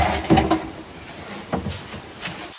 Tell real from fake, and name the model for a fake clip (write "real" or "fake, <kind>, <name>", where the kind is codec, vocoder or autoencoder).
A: real